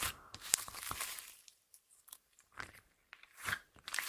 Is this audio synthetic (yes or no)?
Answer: yes